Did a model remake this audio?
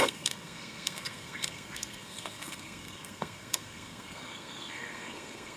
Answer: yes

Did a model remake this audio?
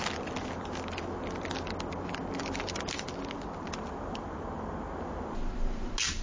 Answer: no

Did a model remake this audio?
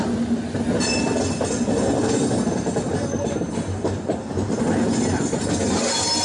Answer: no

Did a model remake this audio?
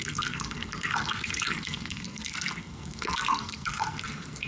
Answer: yes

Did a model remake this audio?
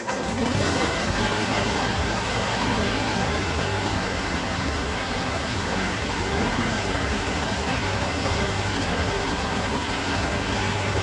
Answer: yes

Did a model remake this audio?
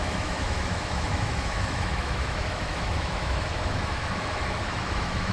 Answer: yes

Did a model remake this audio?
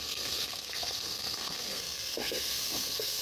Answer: yes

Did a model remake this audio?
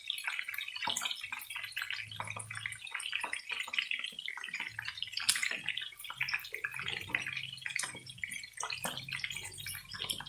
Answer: no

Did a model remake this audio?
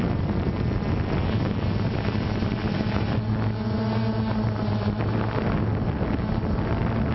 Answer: no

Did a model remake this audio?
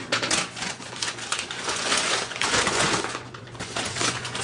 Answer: yes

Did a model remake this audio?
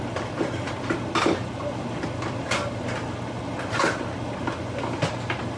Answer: no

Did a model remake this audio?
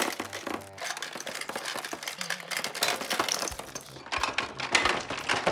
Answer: no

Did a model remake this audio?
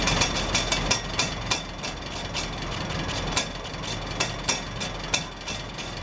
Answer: no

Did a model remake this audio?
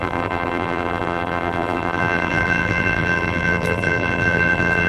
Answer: yes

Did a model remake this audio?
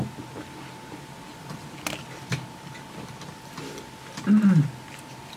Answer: no